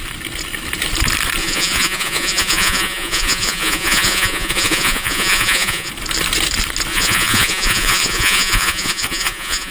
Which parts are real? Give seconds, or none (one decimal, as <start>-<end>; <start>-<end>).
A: 0.0-1.4; 5.9-6.9